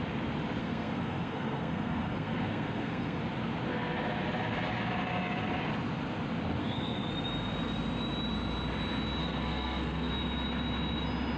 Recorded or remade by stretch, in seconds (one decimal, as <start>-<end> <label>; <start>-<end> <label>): 0.0-0.6 recorded; 0.6-3.2 remade; 3.2-6.6 recorded; 6.6-7.1 remade; 7.1-9.2 recorded; 9.2-10.1 remade; 10.1-11.4 recorded